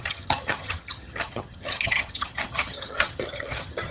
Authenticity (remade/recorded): remade